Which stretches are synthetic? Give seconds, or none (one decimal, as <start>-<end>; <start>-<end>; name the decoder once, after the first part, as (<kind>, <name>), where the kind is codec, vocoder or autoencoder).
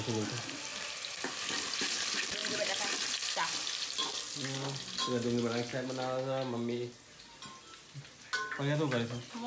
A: 0.7-1.3 (vocoder, BigVGAN v2)